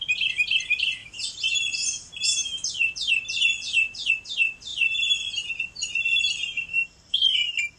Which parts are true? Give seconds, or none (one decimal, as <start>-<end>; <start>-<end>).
none

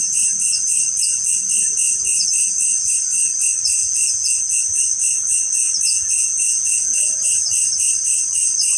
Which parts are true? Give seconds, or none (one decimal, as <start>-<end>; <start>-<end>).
0.0-3.8; 4.6-5.9; 7.1-8.8